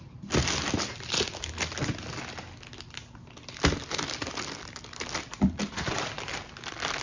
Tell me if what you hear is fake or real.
real